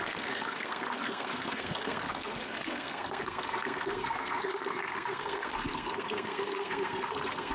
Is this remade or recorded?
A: remade